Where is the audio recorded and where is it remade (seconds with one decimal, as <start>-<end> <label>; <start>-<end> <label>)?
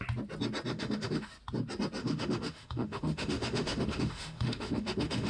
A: 0.0-0.7 recorded; 0.7-1.3 remade; 1.3-2.0 recorded; 2.0-5.3 remade